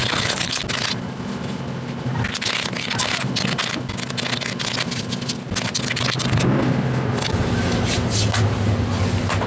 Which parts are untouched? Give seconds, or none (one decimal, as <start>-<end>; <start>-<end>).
0.6-9.5